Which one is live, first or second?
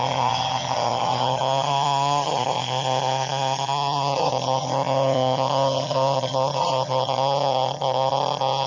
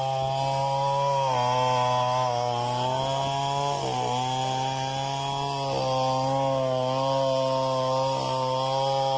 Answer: second